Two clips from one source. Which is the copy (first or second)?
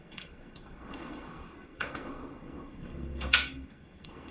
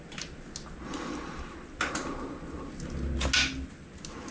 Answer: first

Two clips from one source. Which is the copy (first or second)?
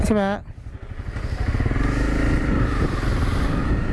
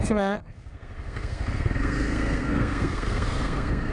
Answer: second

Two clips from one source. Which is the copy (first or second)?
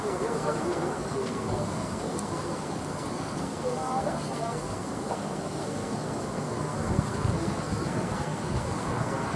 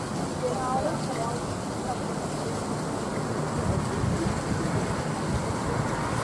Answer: first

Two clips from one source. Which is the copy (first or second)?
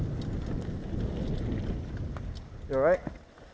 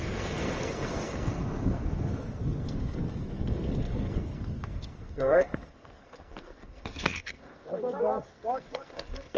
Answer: second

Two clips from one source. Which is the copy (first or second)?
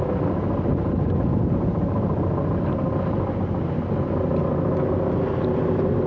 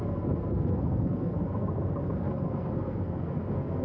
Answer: second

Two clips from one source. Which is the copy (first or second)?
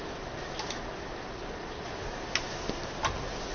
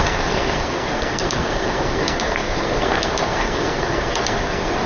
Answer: second